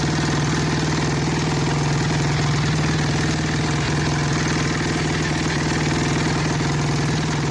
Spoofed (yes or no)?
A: no